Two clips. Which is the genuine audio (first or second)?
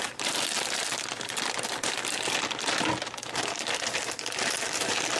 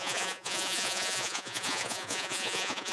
first